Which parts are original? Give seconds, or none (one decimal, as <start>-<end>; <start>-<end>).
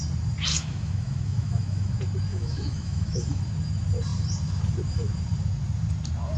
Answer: 0.0-0.5; 1.9-2.3; 3.4-6.4